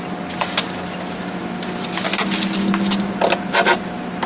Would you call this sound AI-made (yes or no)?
no